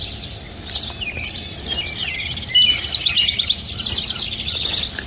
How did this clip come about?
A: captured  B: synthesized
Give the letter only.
A